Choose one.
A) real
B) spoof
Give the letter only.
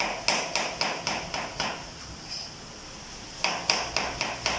A